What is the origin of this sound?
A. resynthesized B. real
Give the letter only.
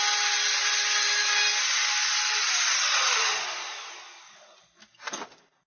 B